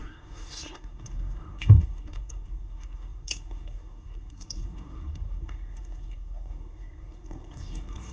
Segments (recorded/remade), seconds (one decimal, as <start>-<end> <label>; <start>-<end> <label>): 0.0-8.1 remade